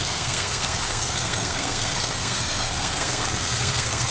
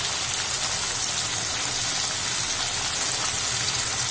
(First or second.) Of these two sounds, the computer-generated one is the first